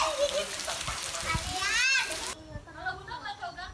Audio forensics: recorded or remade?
recorded